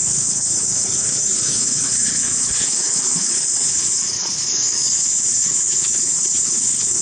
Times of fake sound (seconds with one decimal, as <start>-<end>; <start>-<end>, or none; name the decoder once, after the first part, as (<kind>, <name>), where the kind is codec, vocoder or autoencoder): 0.0-7.0 (codec, HILCodec)